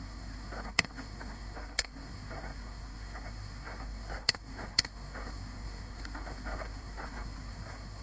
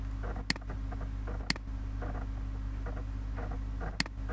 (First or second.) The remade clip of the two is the first